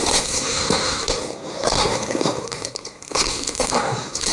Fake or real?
fake